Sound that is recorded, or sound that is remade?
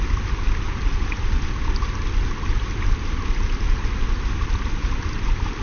recorded